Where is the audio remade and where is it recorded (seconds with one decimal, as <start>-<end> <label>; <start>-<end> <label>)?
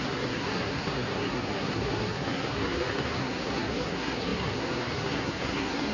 0.0-5.9 remade